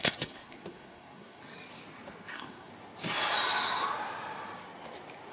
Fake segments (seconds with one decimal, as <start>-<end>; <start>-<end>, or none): 0.0-1.4; 2.3-2.7